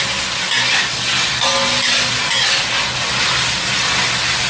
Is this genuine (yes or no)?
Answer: yes